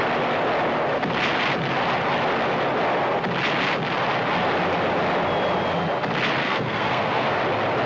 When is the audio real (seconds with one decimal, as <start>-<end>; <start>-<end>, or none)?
0.0-6.4; 7.4-7.9